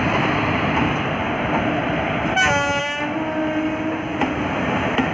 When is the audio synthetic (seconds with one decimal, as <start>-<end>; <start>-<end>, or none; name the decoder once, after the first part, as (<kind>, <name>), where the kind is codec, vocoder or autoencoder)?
none